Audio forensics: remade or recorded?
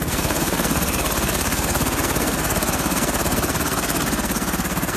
remade